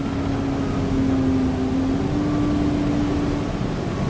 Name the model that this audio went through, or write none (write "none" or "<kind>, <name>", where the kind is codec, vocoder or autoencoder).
none